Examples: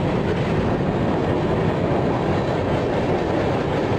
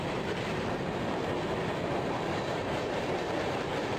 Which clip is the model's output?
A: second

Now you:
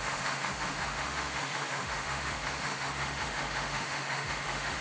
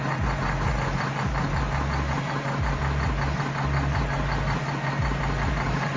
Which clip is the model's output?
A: first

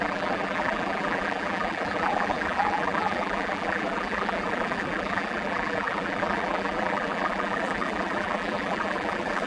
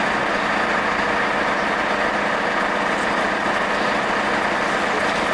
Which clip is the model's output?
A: first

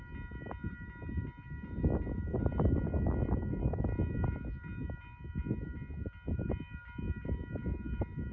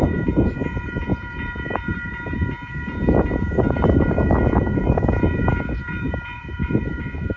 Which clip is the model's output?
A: second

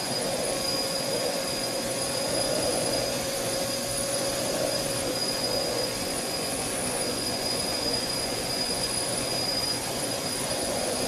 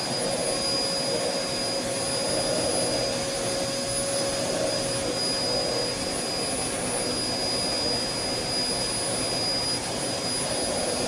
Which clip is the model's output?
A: first